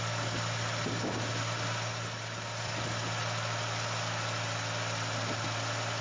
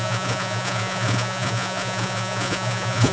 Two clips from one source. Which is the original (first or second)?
first